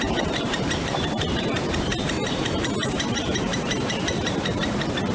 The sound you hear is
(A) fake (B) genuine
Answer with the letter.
A